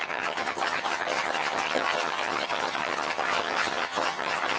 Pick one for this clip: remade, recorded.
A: remade